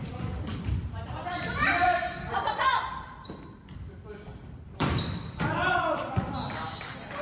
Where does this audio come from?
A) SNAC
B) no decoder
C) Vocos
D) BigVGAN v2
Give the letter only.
D